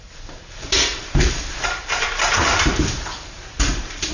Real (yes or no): no